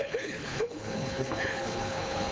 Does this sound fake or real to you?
fake